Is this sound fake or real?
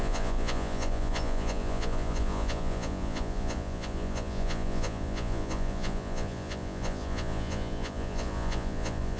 fake